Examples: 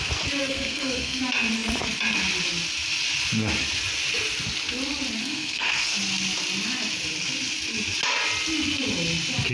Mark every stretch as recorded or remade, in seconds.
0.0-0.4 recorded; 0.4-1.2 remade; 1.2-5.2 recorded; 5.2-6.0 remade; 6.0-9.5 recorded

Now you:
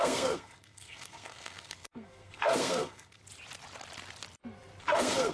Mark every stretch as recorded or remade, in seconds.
0.0-3.2 remade; 3.2-4.8 recorded; 4.8-5.3 remade

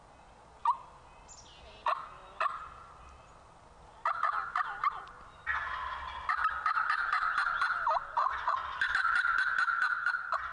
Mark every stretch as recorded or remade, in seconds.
0.0-10.5 recorded

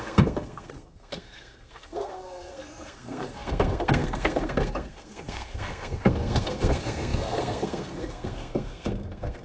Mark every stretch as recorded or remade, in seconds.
0.0-9.4 remade